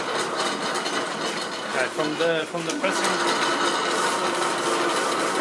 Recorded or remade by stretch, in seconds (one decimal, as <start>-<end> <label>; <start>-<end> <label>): 0.0-5.4 recorded